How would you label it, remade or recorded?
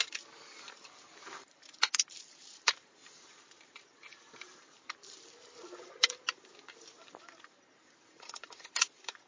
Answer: remade